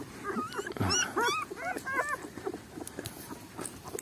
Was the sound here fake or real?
real